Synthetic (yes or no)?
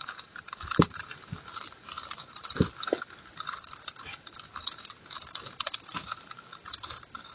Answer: yes